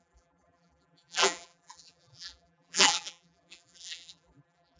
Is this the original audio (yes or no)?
no